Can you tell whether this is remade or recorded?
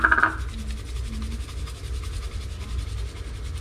recorded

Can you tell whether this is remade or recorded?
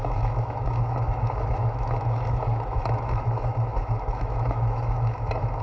remade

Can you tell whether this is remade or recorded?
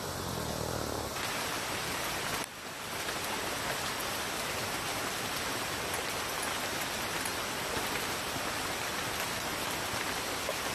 recorded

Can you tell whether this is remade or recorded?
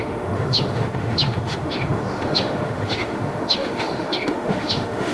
remade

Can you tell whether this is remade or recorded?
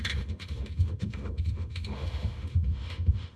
remade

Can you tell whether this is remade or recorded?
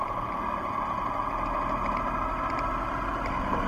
recorded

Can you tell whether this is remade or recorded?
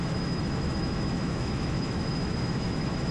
remade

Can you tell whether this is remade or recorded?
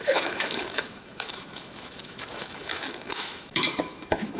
remade